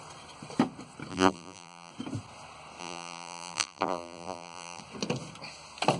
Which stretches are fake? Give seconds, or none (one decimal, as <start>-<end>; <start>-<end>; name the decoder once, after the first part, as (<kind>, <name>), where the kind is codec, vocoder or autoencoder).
1.1-1.9 (vocoder, BigVGAN v2); 2.8-4.8